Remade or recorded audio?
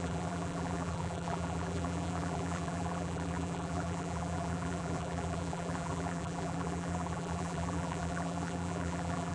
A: remade